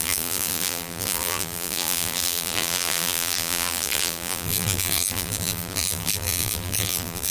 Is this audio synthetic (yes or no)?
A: yes